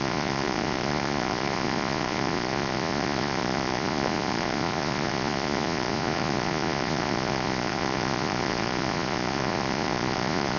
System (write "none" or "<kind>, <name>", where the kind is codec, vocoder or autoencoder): vocoder, Vocos